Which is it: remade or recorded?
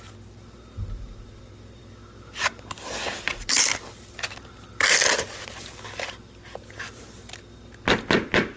recorded